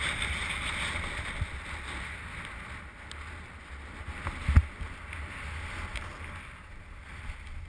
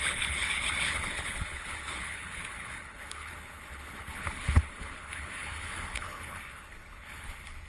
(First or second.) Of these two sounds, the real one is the first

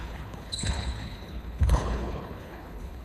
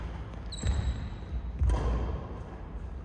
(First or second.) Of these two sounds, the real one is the second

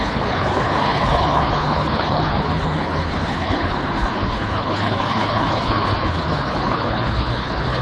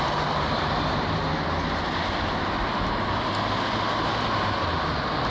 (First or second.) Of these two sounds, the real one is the second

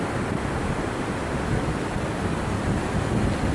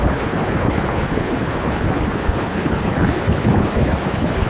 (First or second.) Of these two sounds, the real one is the first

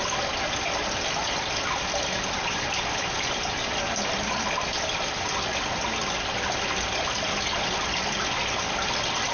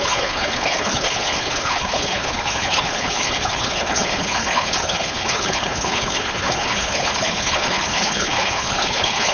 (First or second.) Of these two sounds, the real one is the first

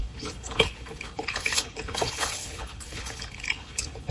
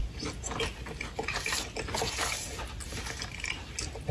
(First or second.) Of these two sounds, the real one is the second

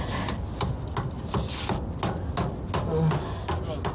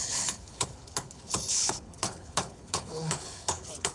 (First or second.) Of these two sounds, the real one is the first